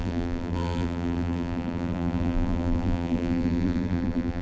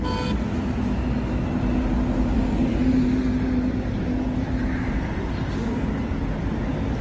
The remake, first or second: first